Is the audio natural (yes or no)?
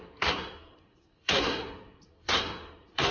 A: no